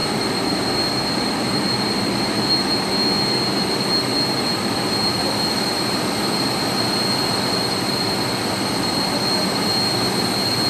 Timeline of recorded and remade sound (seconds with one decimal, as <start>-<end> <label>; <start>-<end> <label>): 0.0-10.7 recorded